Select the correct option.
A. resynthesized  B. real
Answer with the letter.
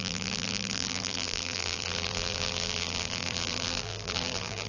A